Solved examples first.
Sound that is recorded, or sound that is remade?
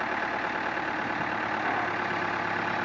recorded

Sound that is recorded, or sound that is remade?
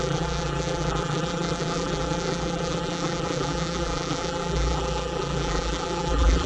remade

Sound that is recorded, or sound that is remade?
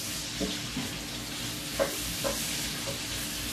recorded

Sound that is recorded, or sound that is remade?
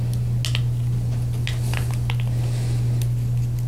recorded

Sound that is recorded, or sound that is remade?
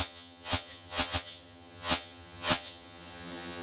remade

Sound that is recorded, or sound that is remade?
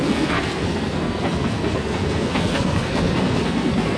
remade